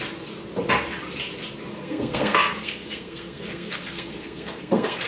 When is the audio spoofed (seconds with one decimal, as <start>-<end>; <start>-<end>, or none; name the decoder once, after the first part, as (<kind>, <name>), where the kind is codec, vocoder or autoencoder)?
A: 1.7-5.1 (codec, SNAC)